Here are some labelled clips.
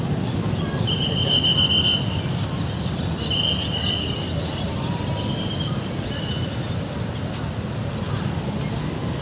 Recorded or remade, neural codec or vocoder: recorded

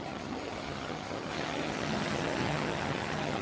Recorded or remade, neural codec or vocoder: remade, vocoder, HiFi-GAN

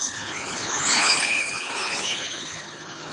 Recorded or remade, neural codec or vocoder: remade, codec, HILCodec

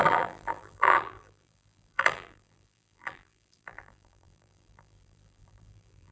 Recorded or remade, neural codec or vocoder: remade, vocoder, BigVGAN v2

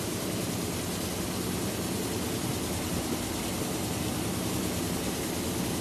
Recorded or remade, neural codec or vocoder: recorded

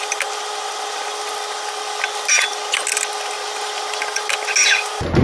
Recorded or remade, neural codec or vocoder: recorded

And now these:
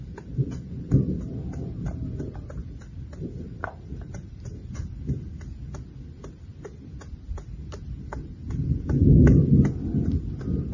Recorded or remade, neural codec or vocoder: recorded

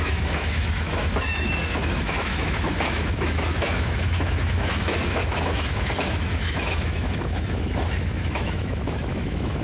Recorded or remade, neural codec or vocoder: remade, autoencoder, DAC-VAE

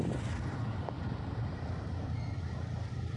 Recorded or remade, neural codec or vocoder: remade, vocoder, BigVGAN v2